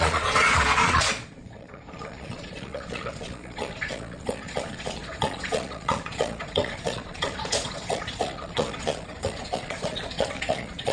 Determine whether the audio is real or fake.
fake